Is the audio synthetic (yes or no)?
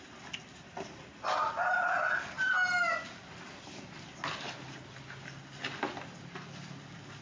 no